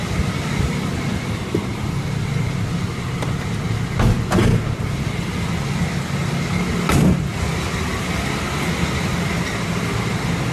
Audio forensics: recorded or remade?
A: recorded